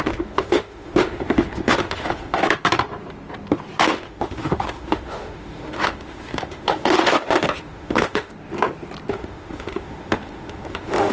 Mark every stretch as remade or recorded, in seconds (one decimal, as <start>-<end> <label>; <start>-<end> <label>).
0.0-2.4 remade; 2.4-3.8 recorded; 3.8-8.3 remade; 8.3-9.1 recorded; 9.1-11.1 remade